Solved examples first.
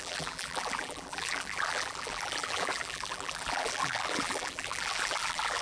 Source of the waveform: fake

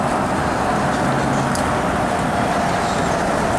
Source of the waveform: real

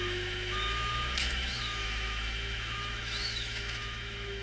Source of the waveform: fake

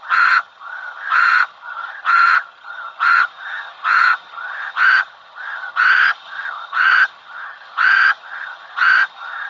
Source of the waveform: fake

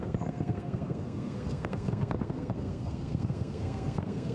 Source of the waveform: fake